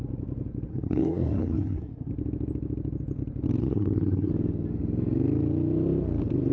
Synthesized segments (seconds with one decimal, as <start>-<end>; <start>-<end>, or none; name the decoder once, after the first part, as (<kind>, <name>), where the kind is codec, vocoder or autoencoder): 0.7-2.1 (codec, SNAC); 3.6-4.3